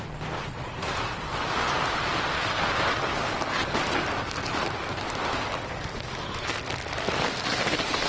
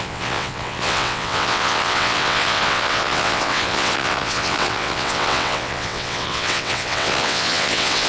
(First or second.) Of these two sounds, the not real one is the second